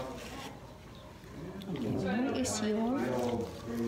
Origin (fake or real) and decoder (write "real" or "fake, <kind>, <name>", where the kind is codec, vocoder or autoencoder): real